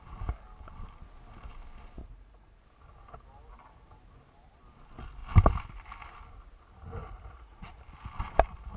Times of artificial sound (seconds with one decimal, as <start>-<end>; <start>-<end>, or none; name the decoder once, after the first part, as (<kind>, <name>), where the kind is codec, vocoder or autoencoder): 2.0-2.6 (vocoder, Vocos); 7.0-7.8